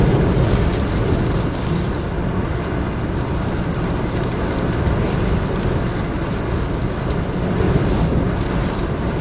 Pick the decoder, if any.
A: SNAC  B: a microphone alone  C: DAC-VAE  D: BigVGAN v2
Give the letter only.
B